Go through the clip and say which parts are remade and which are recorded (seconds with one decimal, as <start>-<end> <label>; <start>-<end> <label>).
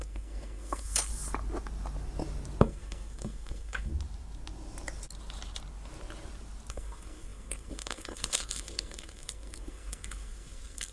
0.0-1.1 remade; 1.1-2.6 recorded; 2.6-3.9 remade; 3.9-6.7 recorded; 6.7-10.9 remade